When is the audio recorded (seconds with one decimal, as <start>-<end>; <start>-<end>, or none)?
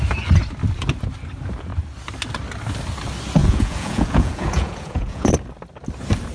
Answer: 0.0-3.4; 5.3-6.3